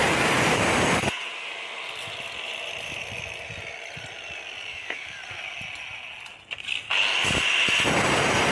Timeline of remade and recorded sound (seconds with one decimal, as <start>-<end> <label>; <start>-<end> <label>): 0.0-4.7 recorded; 4.7-5.2 remade; 5.2-8.5 recorded